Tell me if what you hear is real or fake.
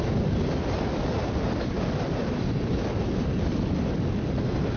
real